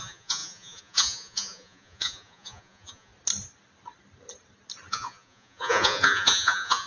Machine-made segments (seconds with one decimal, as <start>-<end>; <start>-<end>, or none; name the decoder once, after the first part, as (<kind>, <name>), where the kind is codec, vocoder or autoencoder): 0.0-3.1 (vocoder, Vocos); 4.9-6.9